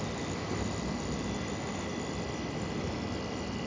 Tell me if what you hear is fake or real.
real